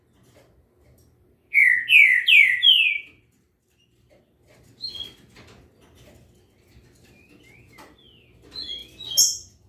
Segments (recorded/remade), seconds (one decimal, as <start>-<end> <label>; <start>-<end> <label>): 0.0-2.1 recorded; 2.1-4.2 remade; 4.2-9.7 recorded